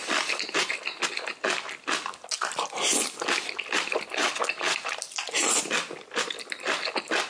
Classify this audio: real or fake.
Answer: real